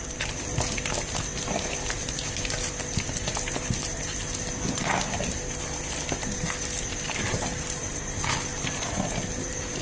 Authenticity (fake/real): real